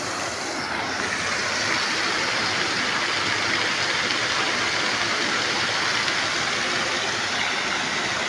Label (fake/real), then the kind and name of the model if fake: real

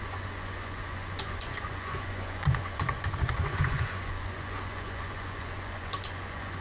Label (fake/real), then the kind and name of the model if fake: fake, vocoder, Vocos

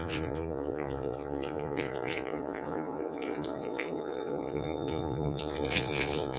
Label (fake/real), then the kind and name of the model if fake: fake, vocoder, Vocos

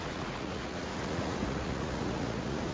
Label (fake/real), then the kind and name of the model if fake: fake, vocoder, Vocos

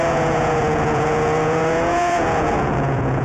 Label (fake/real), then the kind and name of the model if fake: fake, vocoder, Vocos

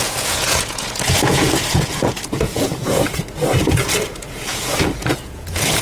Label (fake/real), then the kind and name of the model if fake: fake, vocoder, Vocos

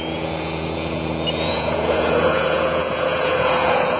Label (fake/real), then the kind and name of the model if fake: fake, vocoder, Vocos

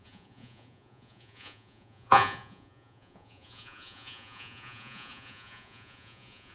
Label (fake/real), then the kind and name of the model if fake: fake, vocoder, Vocos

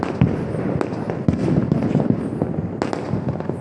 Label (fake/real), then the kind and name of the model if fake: real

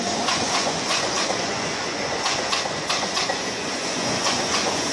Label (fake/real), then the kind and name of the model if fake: fake, vocoder, Vocos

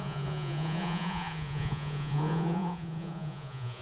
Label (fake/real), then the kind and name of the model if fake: fake, vocoder, Vocos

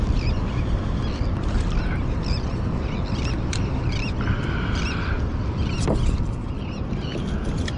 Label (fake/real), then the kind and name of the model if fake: real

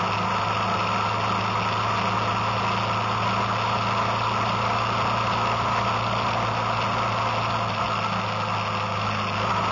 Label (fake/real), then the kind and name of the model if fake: real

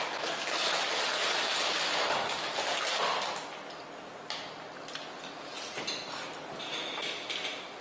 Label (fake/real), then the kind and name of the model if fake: real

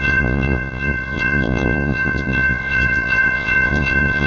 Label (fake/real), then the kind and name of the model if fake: fake, vocoder, Vocos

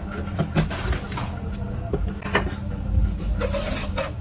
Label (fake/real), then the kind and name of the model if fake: real